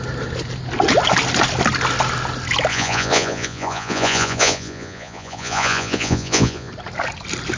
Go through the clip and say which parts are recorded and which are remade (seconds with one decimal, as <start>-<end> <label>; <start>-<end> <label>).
0.0-2.7 recorded; 2.7-6.7 remade; 6.7-7.6 recorded